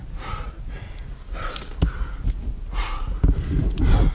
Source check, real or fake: real